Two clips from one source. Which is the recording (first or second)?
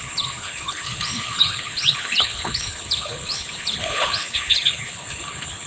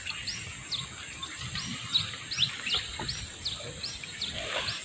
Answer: second